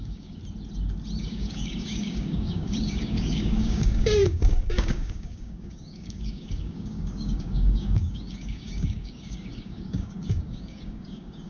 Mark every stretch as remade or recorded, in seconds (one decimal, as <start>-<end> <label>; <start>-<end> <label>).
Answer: 0.0-0.4 remade; 0.4-1.2 recorded; 1.2-11.5 remade